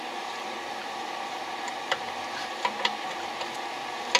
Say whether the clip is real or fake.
real